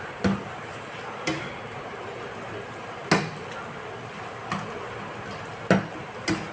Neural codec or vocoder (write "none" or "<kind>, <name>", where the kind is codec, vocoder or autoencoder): none